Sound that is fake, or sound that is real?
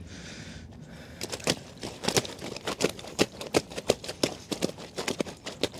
real